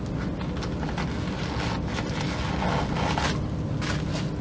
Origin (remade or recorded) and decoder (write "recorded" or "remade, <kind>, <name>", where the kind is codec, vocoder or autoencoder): recorded